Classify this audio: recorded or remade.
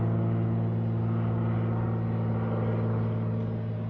recorded